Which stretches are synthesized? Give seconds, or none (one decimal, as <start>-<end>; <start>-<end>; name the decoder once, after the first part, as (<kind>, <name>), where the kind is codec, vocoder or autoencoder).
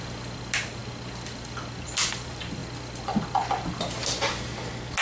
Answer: none